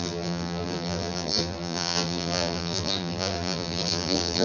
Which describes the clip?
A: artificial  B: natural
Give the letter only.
A